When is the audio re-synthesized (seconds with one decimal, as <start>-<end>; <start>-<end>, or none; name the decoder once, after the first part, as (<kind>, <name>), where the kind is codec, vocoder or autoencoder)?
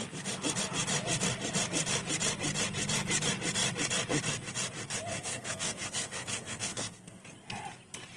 5.1-7.2 (codec, SNAC)